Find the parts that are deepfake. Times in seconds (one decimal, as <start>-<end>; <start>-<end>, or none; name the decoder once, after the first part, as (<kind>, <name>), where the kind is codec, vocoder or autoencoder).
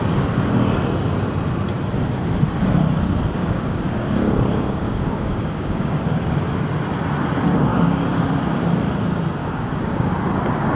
3.4-6.0 (codec, DAC); 7.7-8.3; 9.4-10.1